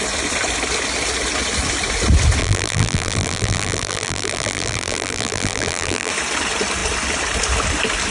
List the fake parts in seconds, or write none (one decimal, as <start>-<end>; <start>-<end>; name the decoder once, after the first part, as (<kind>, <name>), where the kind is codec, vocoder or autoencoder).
2.4-6.1 (vocoder, BigVGAN v2)